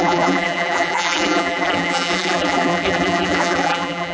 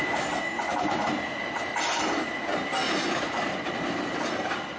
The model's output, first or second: first